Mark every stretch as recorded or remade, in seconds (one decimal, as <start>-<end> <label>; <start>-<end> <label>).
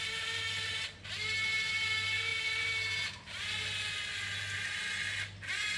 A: 0.0-5.8 recorded